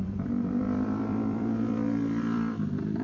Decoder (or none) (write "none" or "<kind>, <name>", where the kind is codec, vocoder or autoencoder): vocoder, BigVGAN v2